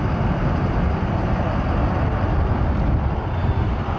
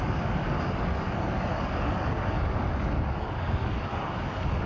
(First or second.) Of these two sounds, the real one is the first